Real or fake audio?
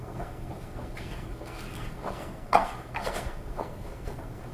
fake